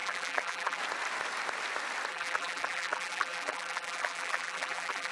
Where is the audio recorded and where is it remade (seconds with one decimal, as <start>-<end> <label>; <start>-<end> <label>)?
0.0-0.8 remade; 0.8-2.1 recorded; 2.1-5.1 remade